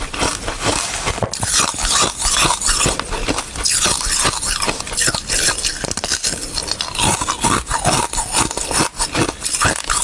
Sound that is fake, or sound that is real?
real